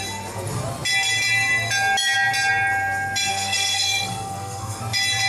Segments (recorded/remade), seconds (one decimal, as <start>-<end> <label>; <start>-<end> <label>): 0.0-3.3 recorded; 3.3-4.8 remade; 4.8-5.3 recorded